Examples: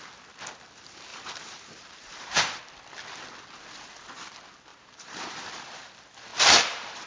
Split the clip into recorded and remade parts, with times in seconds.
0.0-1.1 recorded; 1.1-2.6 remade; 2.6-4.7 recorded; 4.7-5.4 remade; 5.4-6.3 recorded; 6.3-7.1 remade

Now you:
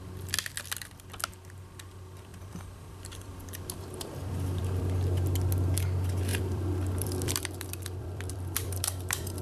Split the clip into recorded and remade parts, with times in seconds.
0.0-2.3 recorded; 2.3-4.6 remade; 4.6-6.3 recorded; 6.3-9.4 remade

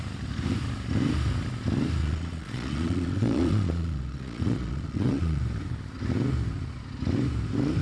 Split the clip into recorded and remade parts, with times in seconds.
0.0-2.0 recorded; 2.0-5.4 remade; 5.4-7.8 recorded

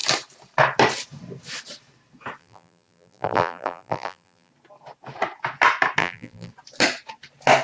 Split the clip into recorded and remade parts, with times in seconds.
0.0-2.4 recorded; 2.4-4.5 remade; 4.5-6.0 recorded; 6.0-6.5 remade; 6.5-7.6 recorded

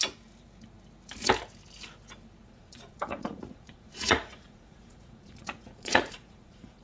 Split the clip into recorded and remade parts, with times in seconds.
0.0-2.4 recorded; 2.4-6.8 remade

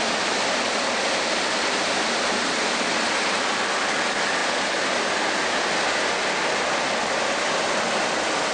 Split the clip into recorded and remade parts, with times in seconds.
0.0-8.5 recorded